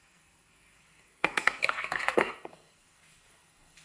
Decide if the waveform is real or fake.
fake